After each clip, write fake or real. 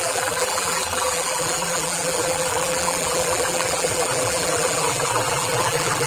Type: fake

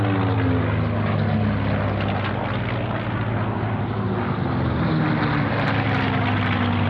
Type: real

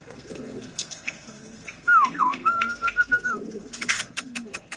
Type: fake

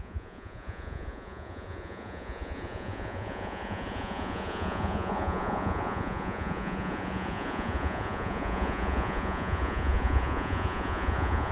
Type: fake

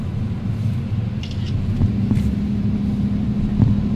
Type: real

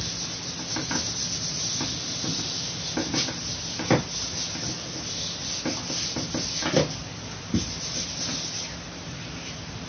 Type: real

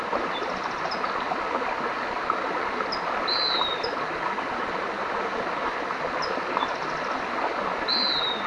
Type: real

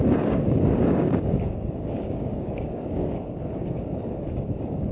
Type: fake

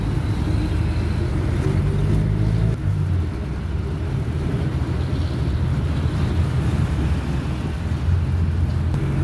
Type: real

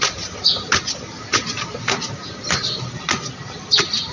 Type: real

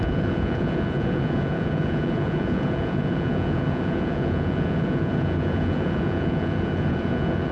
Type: fake